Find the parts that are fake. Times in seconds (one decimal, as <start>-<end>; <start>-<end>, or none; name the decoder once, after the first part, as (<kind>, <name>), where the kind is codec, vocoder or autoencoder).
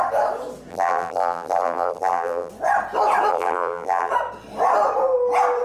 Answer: 0.7-2.5 (vocoder, BigVGAN v2); 3.3-4.1